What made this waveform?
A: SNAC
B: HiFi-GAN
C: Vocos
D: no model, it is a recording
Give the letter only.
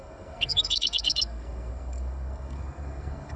A